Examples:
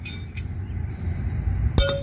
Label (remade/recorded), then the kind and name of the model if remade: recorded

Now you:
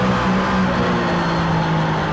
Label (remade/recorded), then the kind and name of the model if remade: recorded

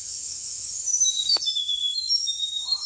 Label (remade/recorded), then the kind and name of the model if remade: remade, autoencoder, DAC-VAE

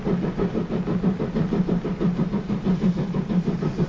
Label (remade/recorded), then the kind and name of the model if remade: recorded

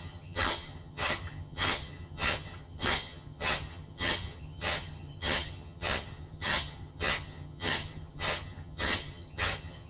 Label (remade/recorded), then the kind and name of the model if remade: remade, vocoder, HiFi-GAN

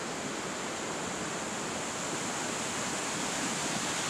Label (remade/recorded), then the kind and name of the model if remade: recorded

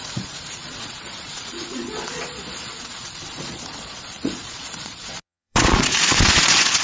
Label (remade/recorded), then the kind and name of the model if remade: remade, vocoder, Vocos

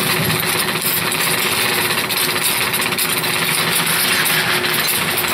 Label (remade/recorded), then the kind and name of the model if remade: recorded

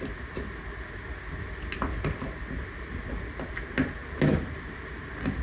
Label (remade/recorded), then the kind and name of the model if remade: recorded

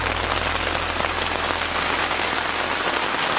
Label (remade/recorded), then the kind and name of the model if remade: recorded